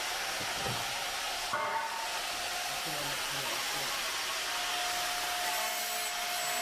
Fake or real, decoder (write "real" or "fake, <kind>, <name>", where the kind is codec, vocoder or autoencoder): real